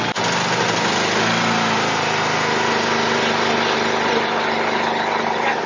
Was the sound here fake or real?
real